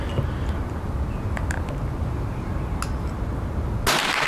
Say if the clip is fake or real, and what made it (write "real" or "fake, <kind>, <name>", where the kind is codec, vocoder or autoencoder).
real